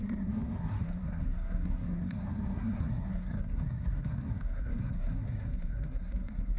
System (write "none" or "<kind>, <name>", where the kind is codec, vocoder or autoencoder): codec, SNAC